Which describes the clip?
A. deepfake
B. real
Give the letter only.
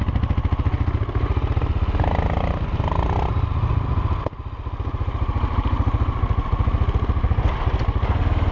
B